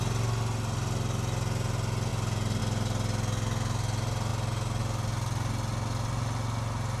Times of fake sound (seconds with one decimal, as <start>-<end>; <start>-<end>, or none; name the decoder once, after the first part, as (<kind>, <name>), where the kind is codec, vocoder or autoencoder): none